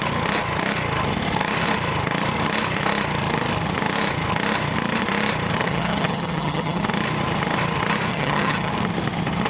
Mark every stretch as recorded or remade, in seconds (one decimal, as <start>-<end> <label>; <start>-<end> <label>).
0.0-5.6 recorded; 5.6-6.8 remade; 6.8-8.1 recorded; 8.1-8.7 remade; 8.7-9.5 recorded

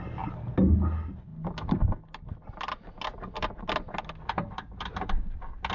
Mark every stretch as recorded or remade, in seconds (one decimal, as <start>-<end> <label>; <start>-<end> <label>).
0.0-5.7 recorded

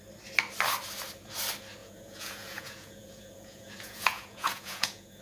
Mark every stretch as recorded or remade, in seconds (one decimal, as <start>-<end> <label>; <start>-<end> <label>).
0.0-1.8 recorded; 1.8-5.2 remade